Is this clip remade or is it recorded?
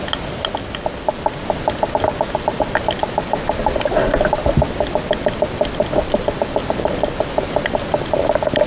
recorded